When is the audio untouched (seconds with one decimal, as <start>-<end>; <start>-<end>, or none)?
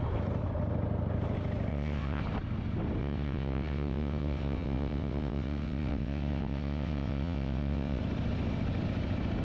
0.0-1.7; 2.2-3.0; 8.0-9.4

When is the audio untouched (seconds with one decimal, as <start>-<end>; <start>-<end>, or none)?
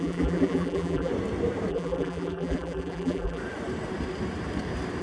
1.1-1.7; 3.4-5.0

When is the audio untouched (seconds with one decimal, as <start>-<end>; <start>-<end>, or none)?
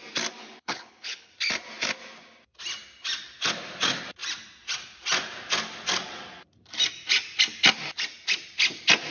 0.0-0.4; 1.3-9.1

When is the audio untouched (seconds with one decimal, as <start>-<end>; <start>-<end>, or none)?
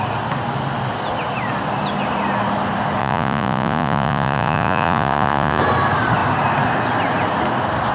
0.0-3.0; 5.6-7.9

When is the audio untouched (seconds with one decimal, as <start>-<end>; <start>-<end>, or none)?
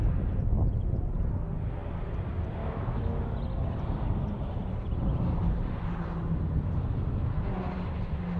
0.0-2.6; 3.2-8.4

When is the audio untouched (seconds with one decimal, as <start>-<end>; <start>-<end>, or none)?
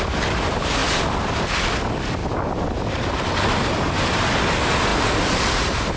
0.0-6.0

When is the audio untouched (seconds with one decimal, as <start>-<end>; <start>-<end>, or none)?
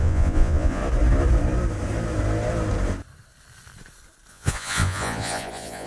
0.8-4.3